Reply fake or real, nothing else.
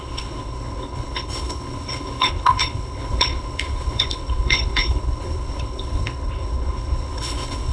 fake